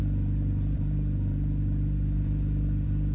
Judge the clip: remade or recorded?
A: recorded